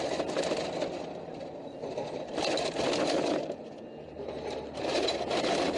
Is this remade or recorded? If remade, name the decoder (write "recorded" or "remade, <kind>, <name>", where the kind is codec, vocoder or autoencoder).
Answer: recorded